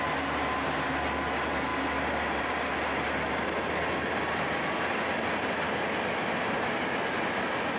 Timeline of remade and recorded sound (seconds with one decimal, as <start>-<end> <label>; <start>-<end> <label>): 0.0-7.8 recorded